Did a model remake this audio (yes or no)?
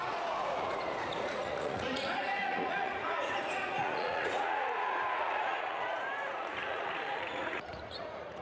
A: yes